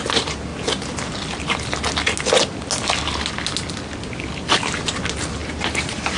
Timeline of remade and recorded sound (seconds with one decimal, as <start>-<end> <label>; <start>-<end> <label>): 0.0-6.2 recorded